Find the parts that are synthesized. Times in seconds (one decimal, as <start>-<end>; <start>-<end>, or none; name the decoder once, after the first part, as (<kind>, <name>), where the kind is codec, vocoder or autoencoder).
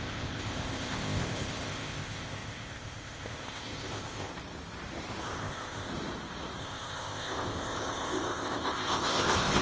0.0-4.3 (codec, ZipCodec); 5.2-5.9; 6.6-9.6